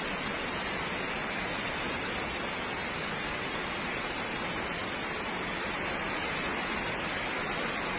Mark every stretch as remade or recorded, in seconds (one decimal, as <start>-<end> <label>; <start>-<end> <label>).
0.0-8.0 recorded

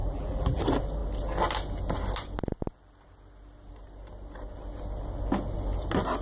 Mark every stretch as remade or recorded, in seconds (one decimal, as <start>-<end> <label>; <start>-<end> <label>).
0.0-0.6 remade; 0.6-6.2 recorded

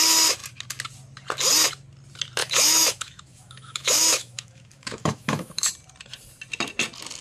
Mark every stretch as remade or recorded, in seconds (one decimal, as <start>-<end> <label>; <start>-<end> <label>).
0.0-2.4 recorded; 2.4-5.7 remade; 5.7-7.2 recorded

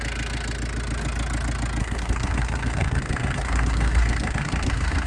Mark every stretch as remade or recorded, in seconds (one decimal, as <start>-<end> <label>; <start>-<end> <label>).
0.0-1.8 recorded; 1.8-5.1 remade

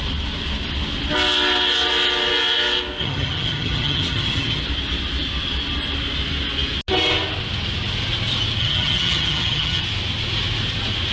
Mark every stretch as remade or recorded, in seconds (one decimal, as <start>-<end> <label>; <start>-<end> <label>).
0.0-3.0 recorded; 3.0-4.6 remade; 4.6-8.6 recorded; 8.6-9.8 remade; 9.8-11.1 recorded

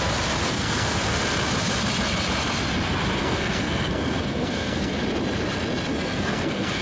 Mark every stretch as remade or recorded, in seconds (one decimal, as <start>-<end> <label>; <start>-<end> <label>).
0.0-0.4 recorded; 0.4-1.0 remade; 1.0-3.2 recorded; 3.2-4.9 remade; 4.9-5.9 recorded; 5.9-6.8 remade

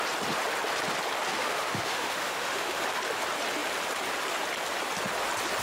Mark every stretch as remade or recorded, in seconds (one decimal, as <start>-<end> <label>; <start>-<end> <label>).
0.0-1.3 recorded; 1.3-2.8 remade; 2.8-5.6 recorded

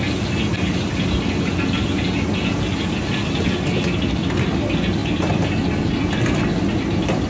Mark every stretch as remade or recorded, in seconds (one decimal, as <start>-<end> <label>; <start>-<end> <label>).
0.0-7.3 recorded